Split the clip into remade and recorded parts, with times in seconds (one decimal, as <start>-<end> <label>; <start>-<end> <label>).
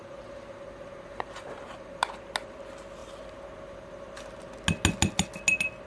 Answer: 0.0-2.0 remade; 2.0-3.0 recorded; 3.0-4.5 remade; 4.5-5.9 recorded